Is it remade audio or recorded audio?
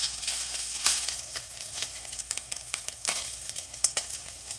remade